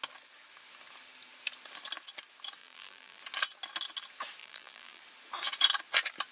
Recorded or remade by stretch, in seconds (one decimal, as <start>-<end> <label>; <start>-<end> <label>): 0.0-2.6 recorded; 2.6-3.2 remade; 3.2-4.4 recorded; 4.4-5.0 remade; 5.0-6.3 recorded